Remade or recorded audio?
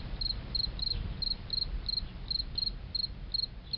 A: recorded